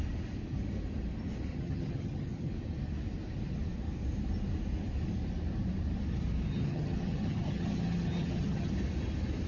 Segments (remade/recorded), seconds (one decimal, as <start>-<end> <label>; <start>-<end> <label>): 0.0-1.5 recorded; 1.5-2.5 remade; 2.5-6.5 recorded; 6.5-8.7 remade; 8.7-9.5 recorded